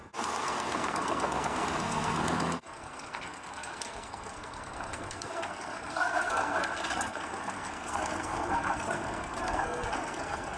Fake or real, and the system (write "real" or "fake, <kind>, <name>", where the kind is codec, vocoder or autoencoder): fake, codec, SNAC